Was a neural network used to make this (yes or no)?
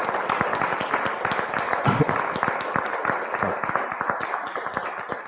no